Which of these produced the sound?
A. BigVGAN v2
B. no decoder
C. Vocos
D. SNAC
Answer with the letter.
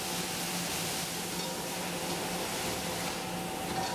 B